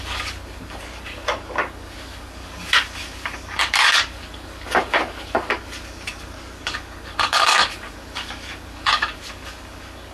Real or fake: fake